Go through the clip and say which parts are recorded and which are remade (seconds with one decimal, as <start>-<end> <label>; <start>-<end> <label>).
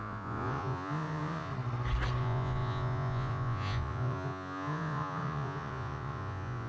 0.0-1.5 remade; 1.5-2.2 recorded; 2.2-6.7 remade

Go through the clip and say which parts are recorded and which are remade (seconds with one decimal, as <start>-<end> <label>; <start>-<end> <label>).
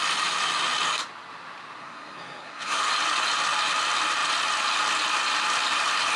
0.0-1.8 recorded; 1.8-2.9 remade; 2.9-6.2 recorded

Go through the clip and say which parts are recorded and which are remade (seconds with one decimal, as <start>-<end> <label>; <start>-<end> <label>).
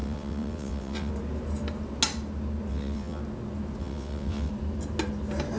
0.0-1.1 remade; 1.1-2.7 recorded; 2.7-3.2 remade; 3.2-3.8 recorded; 3.8-4.5 remade; 4.5-5.6 recorded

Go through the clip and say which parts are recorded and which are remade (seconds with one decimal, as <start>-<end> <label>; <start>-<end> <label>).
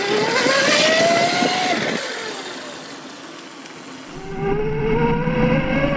0.0-6.0 recorded